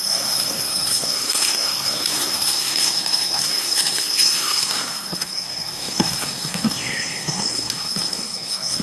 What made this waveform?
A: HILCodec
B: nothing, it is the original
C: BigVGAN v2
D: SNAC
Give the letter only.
D